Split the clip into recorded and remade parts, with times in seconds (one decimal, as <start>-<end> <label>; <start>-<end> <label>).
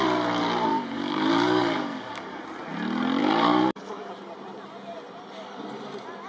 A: 0.0-0.7 recorded; 0.7-2.4 remade; 2.4-3.2 recorded; 3.2-4.1 remade; 4.1-6.3 recorded